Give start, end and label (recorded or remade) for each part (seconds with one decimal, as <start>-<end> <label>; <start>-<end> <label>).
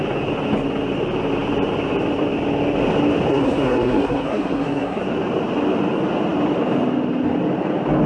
0.0-3.3 recorded; 3.3-5.0 remade; 5.0-8.1 recorded